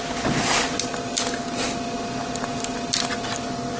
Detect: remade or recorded recorded